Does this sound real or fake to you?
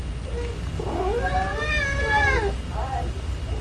real